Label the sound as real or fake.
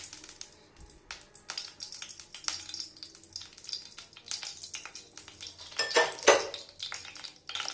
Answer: real